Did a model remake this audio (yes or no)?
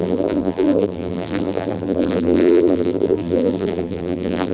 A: yes